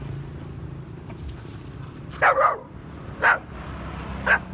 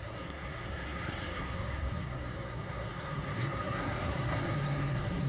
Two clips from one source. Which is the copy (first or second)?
second